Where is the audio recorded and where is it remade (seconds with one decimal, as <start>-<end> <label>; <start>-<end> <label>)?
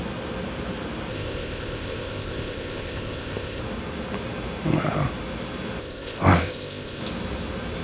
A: 0.0-1.1 recorded; 1.1-3.6 remade; 3.6-5.8 recorded; 5.8-7.0 remade; 7.0-7.8 recorded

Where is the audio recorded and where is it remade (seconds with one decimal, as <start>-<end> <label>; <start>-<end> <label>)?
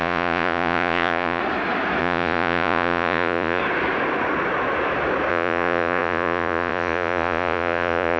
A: 0.0-1.4 remade; 1.4-2.0 recorded; 2.0-3.6 remade; 3.6-5.3 recorded; 5.3-8.2 remade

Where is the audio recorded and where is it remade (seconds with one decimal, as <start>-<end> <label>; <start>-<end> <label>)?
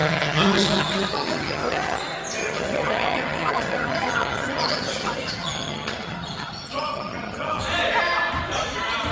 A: 0.0-2.0 remade; 2.0-2.4 recorded; 2.4-7.6 remade; 7.6-9.1 recorded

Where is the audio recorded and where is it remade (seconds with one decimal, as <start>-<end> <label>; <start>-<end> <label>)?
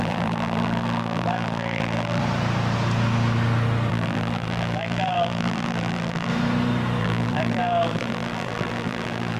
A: 0.0-2.2 remade; 2.2-3.9 recorded; 3.9-6.3 remade; 6.3-7.0 recorded; 7.0-9.4 remade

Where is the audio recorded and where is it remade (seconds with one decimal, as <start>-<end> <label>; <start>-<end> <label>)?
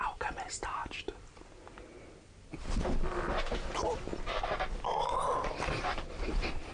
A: 0.0-0.8 remade; 0.8-3.4 recorded; 3.4-4.1 remade; 4.1-6.1 recorded; 6.1-6.7 remade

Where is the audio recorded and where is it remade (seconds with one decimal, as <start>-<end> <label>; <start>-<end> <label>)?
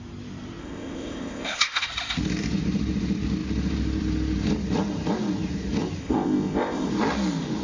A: 0.0-0.6 recorded; 0.6-1.9 remade; 1.9-6.0 recorded; 6.0-6.9 remade; 6.9-7.6 recorded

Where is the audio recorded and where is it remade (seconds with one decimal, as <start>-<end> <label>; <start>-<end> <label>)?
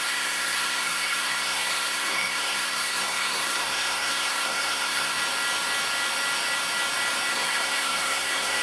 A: 0.0-5.2 remade; 5.2-7.3 recorded; 7.3-8.6 remade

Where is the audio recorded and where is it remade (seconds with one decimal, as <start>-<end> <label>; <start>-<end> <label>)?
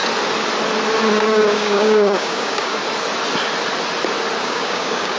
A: 0.0-1.2 recorded; 1.2-2.8 remade; 2.8-4.4 recorded; 4.4-5.2 remade